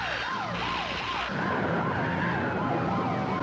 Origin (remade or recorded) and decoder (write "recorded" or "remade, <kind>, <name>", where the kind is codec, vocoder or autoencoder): recorded